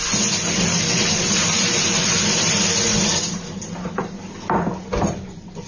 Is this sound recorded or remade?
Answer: recorded